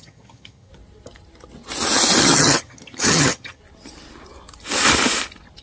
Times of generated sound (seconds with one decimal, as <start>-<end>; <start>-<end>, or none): 0.0-0.7; 2.2-3.6